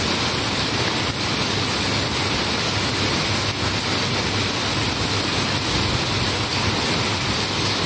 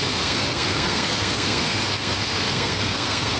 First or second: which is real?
first